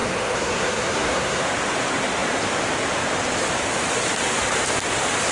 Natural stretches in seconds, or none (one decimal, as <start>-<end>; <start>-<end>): 1.4-5.3